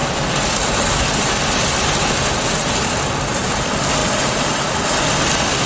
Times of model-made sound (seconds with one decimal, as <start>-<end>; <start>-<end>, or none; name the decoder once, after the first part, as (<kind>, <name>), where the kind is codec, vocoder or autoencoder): none

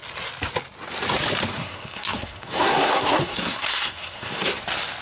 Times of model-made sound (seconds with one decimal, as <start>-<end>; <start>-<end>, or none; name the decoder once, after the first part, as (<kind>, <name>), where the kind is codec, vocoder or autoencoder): 1.6-4.6 (codec, SNAC)

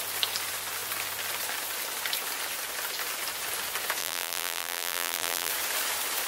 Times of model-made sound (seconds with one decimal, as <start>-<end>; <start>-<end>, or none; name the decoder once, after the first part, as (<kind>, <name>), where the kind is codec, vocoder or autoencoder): 4.0-5.5 (vocoder, BigVGAN v2)

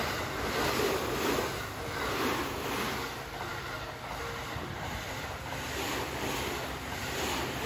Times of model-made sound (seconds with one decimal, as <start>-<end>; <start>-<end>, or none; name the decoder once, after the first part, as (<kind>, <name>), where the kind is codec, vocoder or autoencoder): none

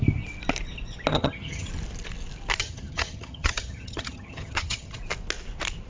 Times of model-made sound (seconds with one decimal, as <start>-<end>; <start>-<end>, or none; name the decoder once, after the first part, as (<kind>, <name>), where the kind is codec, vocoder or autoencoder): 1.1-1.7 (vocoder, HiFi-GAN); 2.6-5.0

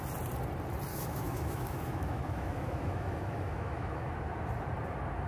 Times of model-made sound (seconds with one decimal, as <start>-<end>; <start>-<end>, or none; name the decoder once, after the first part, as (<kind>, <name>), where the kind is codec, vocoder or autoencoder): 0.9-4.1 (autoencoder, DAC-VAE)